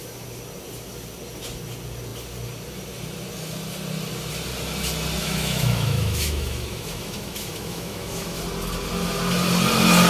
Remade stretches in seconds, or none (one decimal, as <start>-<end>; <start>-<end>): 5.2-8.4